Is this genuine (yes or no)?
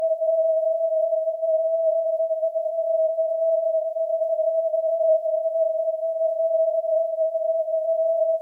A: no